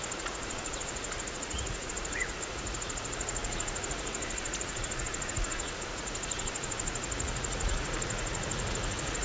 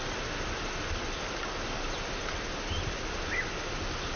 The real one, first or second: second